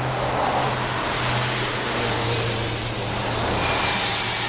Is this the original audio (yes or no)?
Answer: yes